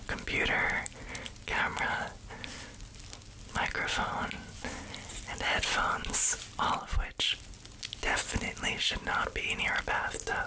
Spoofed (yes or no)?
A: no